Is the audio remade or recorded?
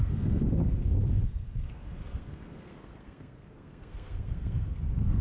remade